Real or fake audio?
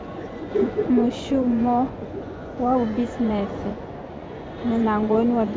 fake